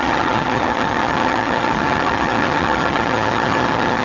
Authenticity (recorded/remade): remade